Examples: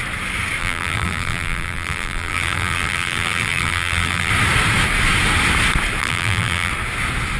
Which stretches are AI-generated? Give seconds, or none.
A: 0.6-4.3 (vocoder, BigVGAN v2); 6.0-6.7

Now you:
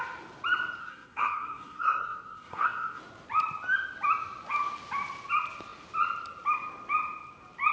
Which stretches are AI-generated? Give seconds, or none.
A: 0.8-3.0 (codec, SNAC)